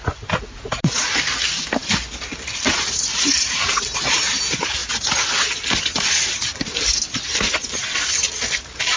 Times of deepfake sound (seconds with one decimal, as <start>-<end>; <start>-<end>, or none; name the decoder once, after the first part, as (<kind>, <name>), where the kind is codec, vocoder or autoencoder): none